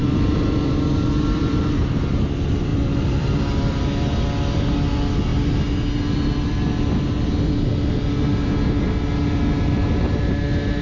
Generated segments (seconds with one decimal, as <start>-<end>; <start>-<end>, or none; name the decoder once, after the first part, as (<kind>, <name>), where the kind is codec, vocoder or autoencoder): 0.0-2.0 (vocoder, BigVGAN v2); 2.7-3.8